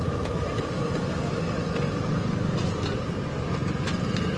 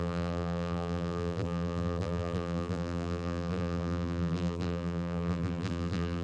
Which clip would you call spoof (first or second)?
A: second